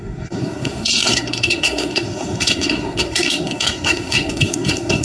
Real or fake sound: fake